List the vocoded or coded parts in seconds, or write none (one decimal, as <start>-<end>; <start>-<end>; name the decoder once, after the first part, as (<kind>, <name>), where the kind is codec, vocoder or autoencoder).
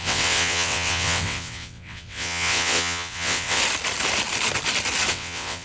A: 0.0-3.6 (vocoder, WaveNeXt); 5.1-5.6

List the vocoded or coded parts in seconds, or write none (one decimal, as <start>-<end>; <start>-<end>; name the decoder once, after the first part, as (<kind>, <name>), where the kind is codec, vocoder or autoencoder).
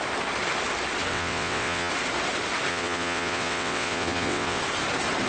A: 1.1-1.9 (vocoder, WaveNeXt); 2.7-4.6